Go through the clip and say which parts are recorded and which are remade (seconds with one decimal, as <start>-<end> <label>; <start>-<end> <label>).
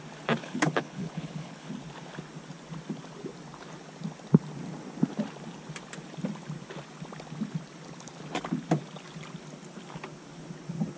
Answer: 0.0-0.4 recorded; 0.4-1.7 remade; 1.7-11.0 recorded